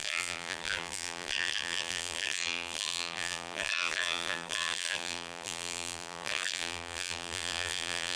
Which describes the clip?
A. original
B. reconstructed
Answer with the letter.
B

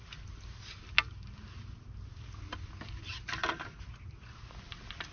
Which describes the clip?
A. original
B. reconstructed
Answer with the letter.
A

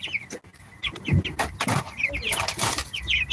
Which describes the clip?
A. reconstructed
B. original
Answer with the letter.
B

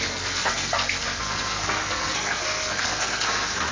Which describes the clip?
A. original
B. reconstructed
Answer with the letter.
B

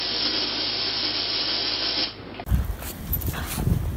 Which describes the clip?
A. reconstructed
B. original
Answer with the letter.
B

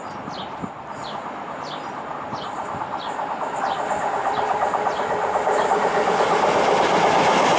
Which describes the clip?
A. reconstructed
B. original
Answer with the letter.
B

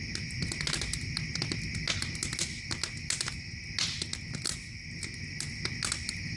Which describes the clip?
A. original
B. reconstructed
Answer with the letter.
A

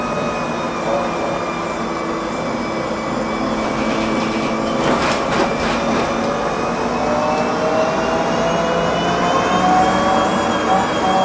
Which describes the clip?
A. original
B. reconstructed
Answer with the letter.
A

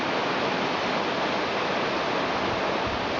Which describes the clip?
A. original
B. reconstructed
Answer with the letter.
A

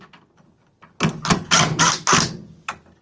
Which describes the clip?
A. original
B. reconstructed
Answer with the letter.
A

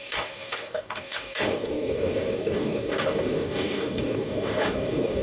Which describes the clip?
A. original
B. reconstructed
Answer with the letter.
B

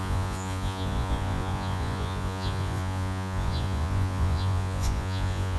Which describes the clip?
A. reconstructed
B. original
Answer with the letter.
A